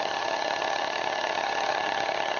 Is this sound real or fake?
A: fake